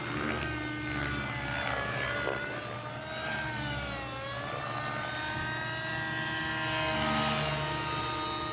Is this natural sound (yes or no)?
yes